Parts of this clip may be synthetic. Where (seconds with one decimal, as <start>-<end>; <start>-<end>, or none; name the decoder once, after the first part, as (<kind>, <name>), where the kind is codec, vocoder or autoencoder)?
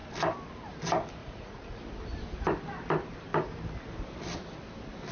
1.2-1.8 (vocoder, Vocos)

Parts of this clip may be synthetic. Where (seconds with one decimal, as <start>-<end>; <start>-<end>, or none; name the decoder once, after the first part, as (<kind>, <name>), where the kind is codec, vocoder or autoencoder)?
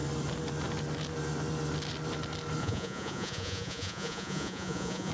2.6-5.1 (vocoder, Vocos)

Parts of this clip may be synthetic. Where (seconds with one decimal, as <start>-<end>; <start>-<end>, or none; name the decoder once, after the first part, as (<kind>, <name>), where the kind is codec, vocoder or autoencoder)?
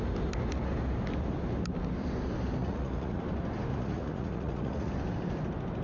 2.6-3.2 (vocoder, Vocos); 3.7-4.9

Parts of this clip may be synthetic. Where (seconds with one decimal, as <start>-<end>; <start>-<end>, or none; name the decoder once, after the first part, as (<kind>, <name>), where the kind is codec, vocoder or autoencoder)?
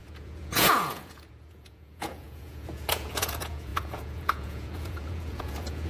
0.0-5.9 (vocoder, Vocos)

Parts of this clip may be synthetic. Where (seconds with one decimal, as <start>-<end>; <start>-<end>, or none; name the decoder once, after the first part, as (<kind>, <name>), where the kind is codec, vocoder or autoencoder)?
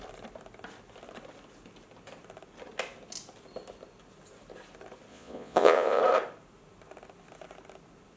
5.1-6.0 (vocoder, Vocos)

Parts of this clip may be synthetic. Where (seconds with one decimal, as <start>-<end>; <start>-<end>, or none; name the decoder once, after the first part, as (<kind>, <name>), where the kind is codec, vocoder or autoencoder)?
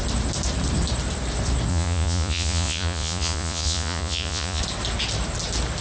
1.7-4.6 (vocoder, Vocos)